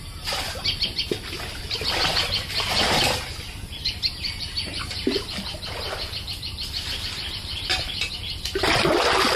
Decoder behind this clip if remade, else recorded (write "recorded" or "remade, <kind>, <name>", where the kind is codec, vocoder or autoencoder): recorded